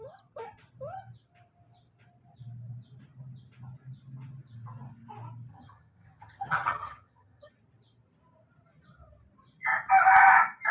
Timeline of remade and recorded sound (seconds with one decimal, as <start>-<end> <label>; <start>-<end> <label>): 0.0-5.5 recorded; 5.5-7.5 remade; 7.5-10.7 recorded